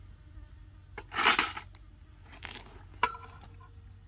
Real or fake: real